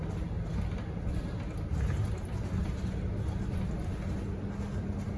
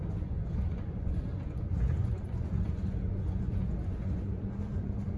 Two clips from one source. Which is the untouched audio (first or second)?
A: first